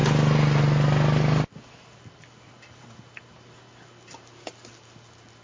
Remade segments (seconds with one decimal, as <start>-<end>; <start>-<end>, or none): none